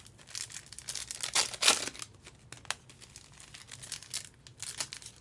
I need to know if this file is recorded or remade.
recorded